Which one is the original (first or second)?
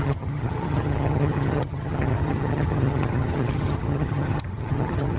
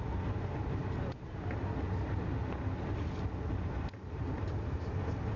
second